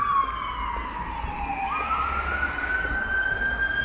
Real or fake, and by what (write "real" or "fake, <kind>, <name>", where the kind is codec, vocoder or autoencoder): real